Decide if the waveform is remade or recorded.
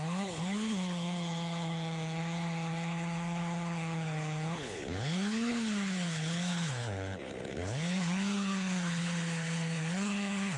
remade